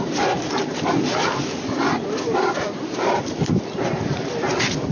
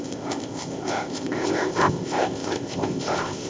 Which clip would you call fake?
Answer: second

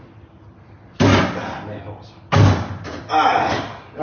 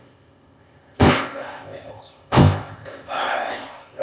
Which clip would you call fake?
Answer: second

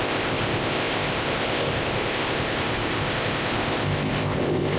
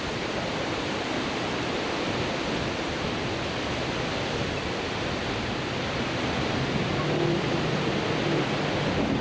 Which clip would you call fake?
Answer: first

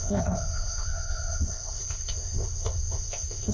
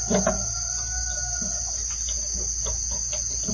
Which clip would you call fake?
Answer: first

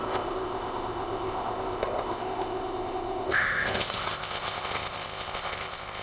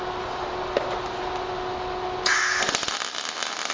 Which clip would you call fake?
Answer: first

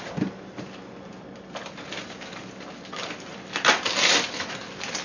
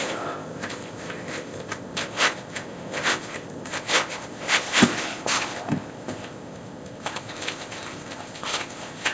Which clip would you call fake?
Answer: second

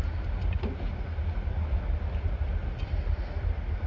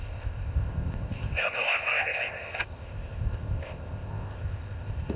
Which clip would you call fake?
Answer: second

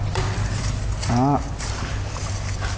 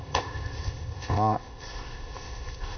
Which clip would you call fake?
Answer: second